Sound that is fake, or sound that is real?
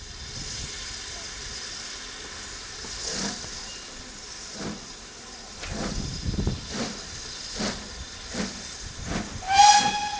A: real